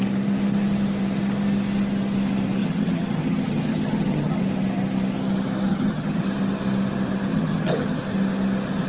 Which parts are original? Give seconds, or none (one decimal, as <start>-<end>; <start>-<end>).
0.0-2.6; 4.4-5.7; 6.2-7.3; 8.0-8.9